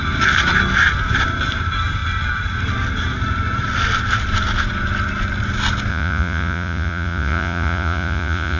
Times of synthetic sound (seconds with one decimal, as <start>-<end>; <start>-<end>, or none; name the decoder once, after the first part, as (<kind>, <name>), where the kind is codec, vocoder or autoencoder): 5.9-8.6 (vocoder, Vocos)